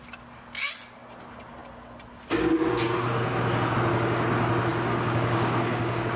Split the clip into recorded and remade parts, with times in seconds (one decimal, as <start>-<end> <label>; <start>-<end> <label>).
0.0-4.7 recorded; 4.7-6.2 remade